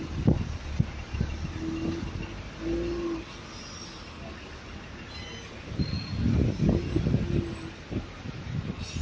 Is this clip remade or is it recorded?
recorded